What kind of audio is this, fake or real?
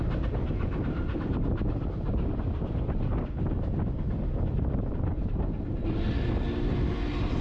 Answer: real